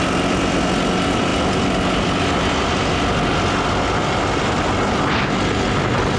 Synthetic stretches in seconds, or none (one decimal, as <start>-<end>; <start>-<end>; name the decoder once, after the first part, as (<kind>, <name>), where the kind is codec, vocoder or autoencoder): none